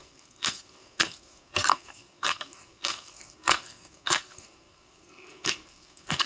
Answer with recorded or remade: remade